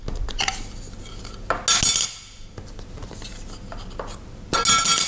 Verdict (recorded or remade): recorded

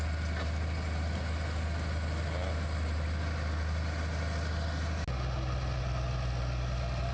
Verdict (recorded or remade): recorded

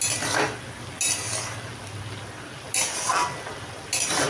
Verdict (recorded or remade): recorded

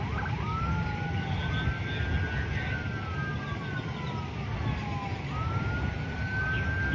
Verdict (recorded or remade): recorded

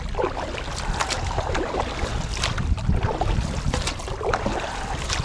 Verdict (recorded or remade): recorded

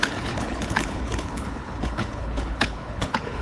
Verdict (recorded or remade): remade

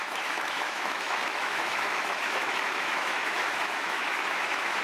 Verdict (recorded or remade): remade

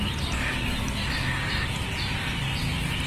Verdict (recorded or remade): recorded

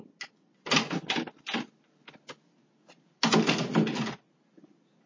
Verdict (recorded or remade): recorded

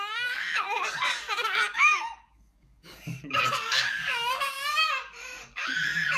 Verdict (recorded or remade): remade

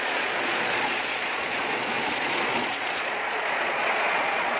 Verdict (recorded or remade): remade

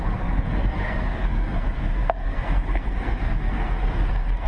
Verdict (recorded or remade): remade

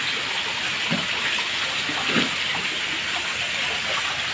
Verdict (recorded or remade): recorded